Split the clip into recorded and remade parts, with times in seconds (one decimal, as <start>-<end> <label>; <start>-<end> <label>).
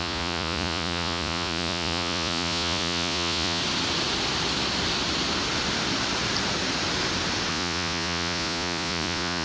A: 0.0-3.6 remade; 3.6-7.5 recorded; 7.5-9.4 remade